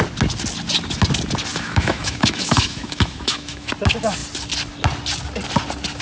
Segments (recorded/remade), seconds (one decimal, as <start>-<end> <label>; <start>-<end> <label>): 0.0-1.5 recorded; 1.5-3.7 remade; 3.7-6.0 recorded